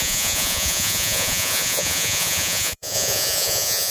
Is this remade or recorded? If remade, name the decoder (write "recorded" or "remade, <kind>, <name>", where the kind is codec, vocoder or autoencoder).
remade, vocoder, Vocos